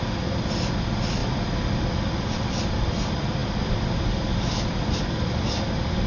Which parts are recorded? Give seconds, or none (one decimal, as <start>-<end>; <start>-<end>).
1.2-2.1